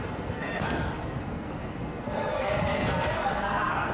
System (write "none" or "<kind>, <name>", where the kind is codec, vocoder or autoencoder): codec, SNAC